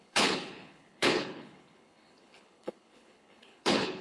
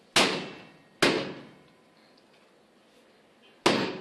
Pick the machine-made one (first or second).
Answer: first